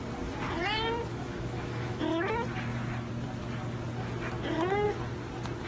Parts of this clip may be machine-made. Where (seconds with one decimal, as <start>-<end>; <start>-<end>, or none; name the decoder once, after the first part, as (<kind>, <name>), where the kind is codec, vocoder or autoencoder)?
1.1-2.0 (autoencoder, DAC-VAE)